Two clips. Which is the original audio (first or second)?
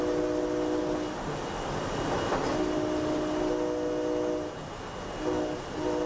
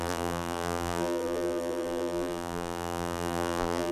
first